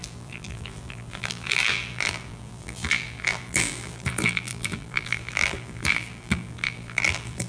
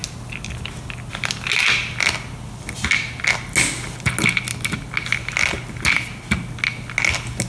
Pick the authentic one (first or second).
second